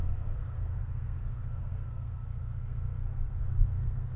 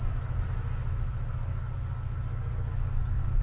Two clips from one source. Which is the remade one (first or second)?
first